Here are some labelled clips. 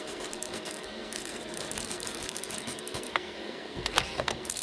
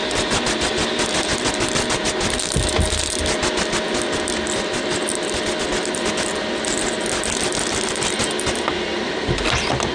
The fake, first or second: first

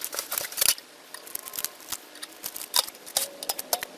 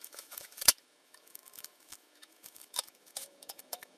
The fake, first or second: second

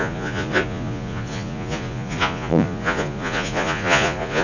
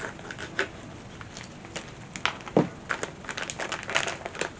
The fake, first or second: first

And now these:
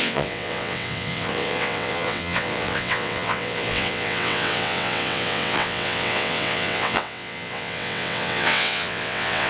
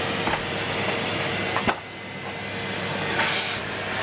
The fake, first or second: first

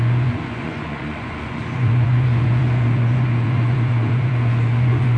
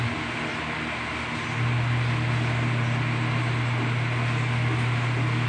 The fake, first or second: first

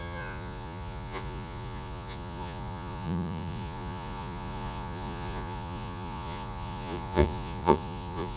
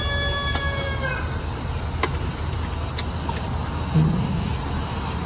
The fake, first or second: first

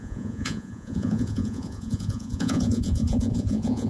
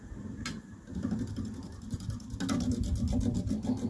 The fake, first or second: first